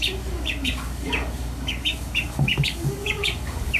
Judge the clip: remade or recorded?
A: remade